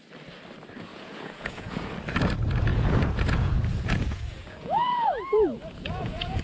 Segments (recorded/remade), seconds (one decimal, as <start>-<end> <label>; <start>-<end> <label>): 0.0-0.9 recorded; 0.9-1.9 remade; 1.9-2.7 recorded; 2.7-6.4 remade